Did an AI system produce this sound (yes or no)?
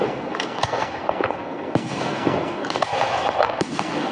yes